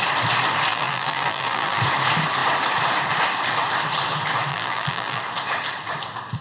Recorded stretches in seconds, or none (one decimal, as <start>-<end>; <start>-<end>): 0.0-0.7; 1.8-4.5; 5.2-6.4

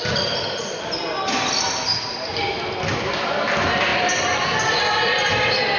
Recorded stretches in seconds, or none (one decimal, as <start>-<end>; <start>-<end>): 0.0-5.8

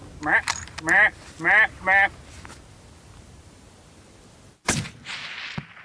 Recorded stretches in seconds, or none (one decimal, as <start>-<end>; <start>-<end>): 0.0-2.7; 5.1-5.8

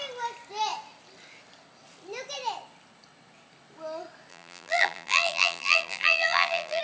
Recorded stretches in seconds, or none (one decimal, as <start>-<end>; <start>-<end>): 0.0-4.3

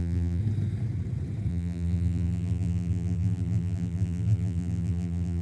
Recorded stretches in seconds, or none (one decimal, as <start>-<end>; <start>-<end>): 0.4-1.5

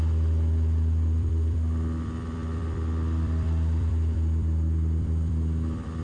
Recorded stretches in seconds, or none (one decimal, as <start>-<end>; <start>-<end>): none

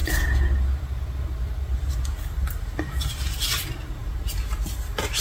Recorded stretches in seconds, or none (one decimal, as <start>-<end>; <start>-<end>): 0.0-5.2

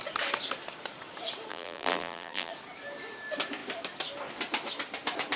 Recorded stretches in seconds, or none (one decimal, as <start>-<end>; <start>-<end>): 0.0-1.5; 2.5-5.4